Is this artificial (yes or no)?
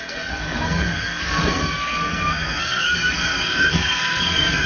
yes